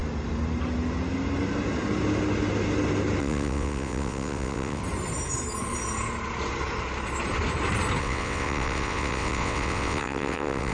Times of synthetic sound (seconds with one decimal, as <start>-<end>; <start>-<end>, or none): 3.2-4.8; 8.0-10.7